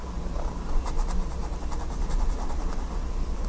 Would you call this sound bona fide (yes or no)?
yes